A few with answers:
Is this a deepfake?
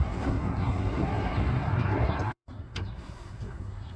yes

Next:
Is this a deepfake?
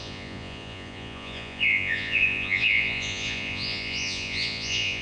yes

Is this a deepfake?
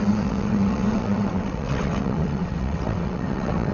yes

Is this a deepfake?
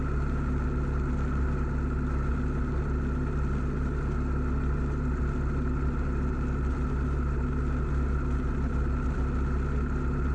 no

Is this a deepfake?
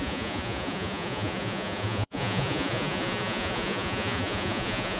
yes